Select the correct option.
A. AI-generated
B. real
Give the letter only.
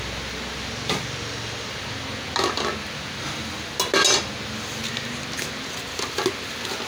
B